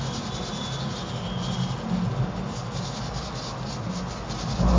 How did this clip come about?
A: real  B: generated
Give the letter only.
A